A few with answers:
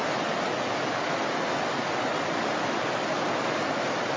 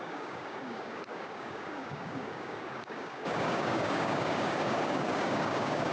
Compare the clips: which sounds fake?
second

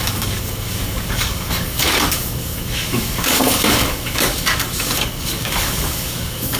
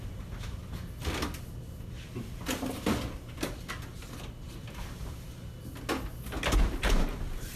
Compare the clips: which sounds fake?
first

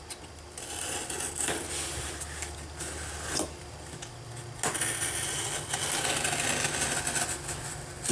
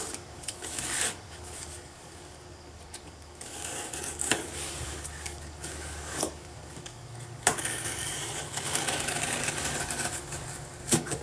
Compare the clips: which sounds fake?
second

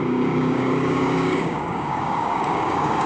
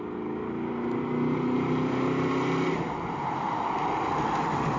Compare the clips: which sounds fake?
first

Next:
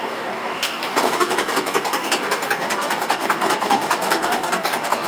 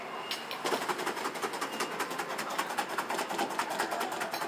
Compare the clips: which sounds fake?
first